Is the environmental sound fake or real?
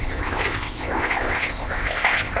fake